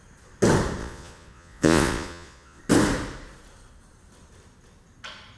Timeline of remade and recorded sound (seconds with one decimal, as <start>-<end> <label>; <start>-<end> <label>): 0.0-0.8 recorded; 0.8-2.6 remade; 2.6-5.4 recorded